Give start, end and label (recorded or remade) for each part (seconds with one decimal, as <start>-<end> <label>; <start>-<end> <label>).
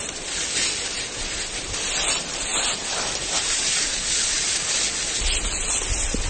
0.0-6.3 recorded